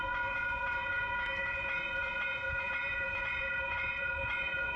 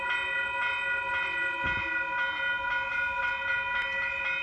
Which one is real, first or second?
second